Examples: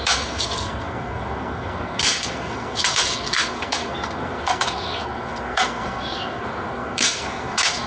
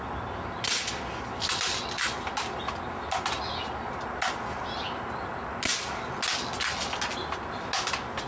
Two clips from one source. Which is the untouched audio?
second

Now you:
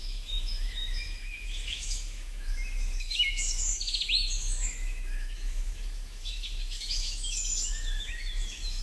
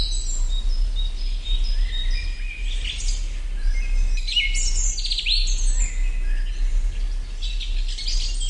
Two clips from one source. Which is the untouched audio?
second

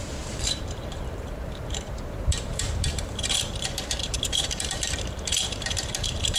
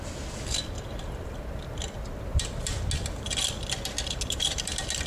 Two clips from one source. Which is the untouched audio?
second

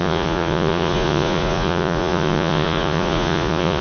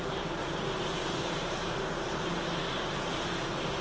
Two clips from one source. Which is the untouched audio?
second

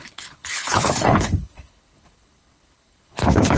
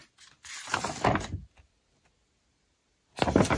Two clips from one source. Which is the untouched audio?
second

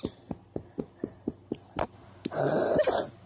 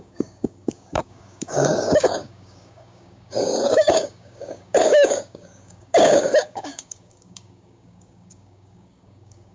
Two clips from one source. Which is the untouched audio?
first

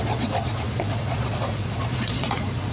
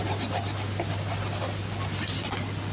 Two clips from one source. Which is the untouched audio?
second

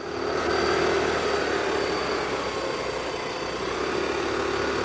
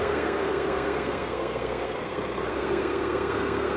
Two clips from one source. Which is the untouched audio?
first